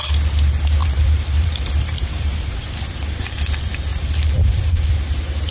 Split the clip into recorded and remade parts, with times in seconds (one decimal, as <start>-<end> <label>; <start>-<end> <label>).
0.0-0.8 recorded; 0.8-2.7 remade; 2.7-3.9 recorded; 3.9-4.9 remade; 4.9-5.5 recorded